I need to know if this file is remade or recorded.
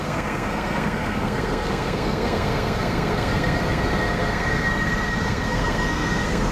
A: remade